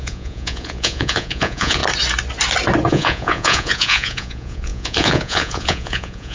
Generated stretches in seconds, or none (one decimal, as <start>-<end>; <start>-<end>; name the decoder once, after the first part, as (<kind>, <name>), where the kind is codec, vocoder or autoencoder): 0.0-1.8 (vocoder, Vocos); 2.9-6.3